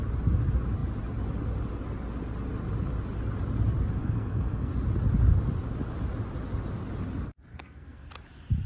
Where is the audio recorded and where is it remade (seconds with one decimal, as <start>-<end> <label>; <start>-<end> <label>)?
0.0-4.0 recorded; 4.0-4.7 remade; 4.7-7.5 recorded; 7.5-8.1 remade; 8.1-8.7 recorded